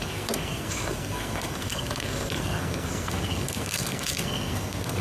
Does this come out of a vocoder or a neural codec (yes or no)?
yes